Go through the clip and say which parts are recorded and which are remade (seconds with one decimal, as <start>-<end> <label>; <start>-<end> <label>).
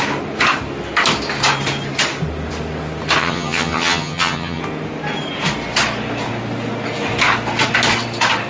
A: 0.0-3.2 recorded; 3.2-4.6 remade; 4.6-8.5 recorded